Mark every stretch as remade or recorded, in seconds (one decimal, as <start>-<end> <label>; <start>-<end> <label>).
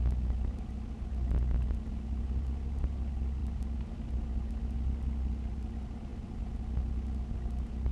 0.0-7.9 recorded